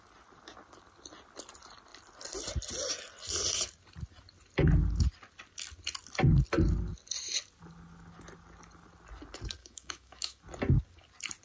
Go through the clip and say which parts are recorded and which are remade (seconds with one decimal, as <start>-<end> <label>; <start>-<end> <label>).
0.0-9.6 recorded; 9.6-10.4 remade; 10.4-11.4 recorded